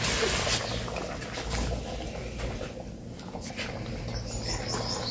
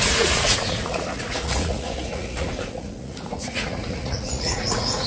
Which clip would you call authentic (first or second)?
first